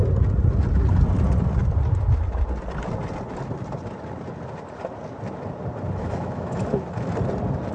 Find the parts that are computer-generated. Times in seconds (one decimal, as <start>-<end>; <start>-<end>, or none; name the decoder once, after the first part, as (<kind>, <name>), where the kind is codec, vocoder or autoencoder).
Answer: 6.0-6.7 (autoencoder, DAC-VAE)